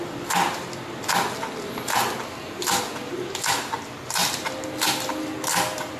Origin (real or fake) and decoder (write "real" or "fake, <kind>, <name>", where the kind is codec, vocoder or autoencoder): real